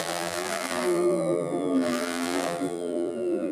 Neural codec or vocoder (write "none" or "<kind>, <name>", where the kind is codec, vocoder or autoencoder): vocoder, BigVGAN v2